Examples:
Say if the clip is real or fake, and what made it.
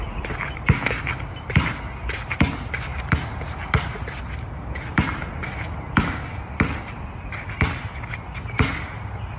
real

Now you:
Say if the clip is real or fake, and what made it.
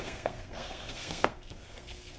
fake, codec, SNAC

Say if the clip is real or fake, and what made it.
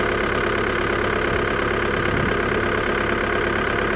real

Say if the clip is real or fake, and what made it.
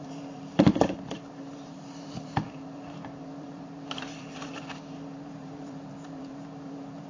fake, vocoder, BigVGAN v2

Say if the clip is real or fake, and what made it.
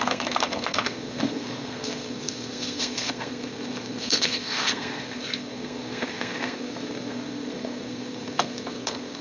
fake, codec, SNAC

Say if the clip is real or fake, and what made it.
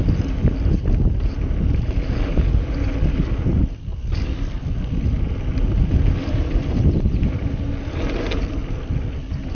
real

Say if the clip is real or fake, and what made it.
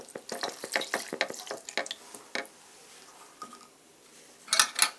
real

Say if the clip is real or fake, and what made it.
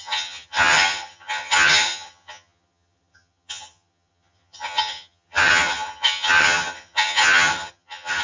fake, vocoder, HiFi-GAN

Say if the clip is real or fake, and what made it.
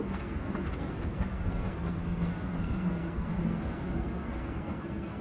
fake, codec, SNAC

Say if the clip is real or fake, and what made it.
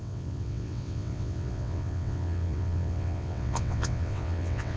fake, vocoder, WaveNeXt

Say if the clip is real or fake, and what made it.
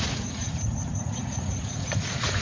fake, vocoder, Vocos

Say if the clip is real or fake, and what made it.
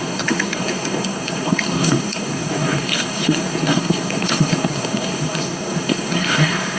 fake, codec, SNAC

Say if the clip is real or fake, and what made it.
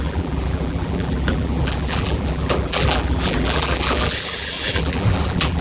fake, vocoder, BigVGAN v2